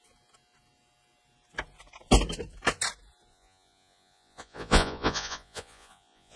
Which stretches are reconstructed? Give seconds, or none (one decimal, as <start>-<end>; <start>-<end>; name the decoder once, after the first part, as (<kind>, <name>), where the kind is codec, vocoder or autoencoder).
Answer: 3.3-6.4 (vocoder, Vocos)